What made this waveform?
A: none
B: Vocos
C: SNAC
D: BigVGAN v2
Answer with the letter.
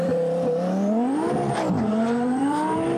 D